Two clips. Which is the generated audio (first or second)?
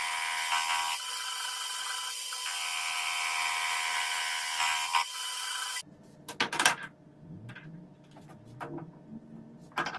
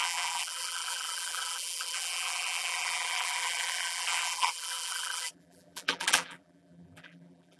second